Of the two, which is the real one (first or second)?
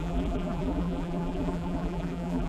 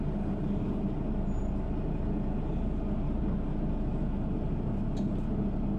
second